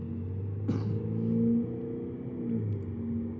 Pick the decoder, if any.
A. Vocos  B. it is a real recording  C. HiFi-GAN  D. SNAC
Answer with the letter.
B